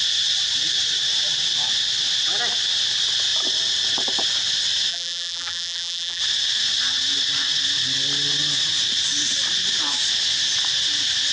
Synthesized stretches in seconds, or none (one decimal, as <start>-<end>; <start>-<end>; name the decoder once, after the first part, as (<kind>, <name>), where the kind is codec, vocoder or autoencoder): 4.9-6.2 (vocoder, BigVGAN v2)